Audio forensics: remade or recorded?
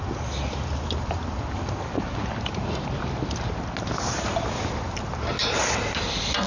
recorded